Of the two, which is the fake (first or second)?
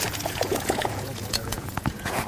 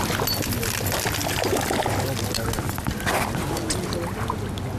first